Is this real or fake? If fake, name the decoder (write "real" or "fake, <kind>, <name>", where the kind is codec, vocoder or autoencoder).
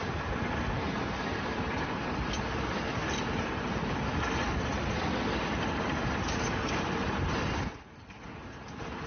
real